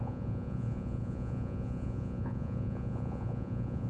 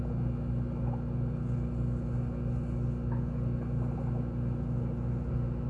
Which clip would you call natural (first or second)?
second